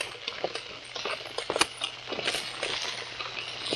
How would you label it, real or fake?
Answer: real